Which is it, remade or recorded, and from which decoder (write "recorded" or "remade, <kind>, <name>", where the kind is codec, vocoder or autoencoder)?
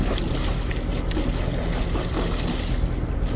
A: recorded